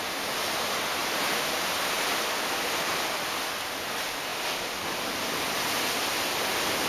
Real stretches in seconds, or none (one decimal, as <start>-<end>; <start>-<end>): 0.0-1.0; 1.7-4.3; 6.4-6.9